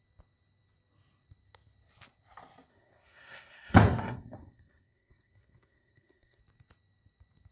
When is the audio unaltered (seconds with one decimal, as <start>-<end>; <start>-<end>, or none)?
0.0-2.7; 6.4-7.5